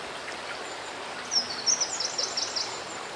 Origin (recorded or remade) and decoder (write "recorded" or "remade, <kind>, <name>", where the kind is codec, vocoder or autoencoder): recorded